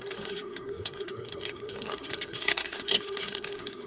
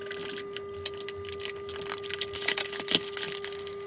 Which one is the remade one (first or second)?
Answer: first